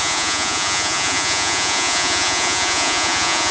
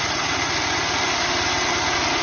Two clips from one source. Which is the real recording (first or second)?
second